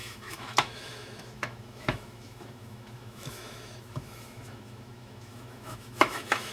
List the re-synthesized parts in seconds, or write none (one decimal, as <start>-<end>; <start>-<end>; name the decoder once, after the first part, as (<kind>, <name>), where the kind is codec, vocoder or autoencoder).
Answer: 0.0-6.5 (autoencoder, DAC-VAE)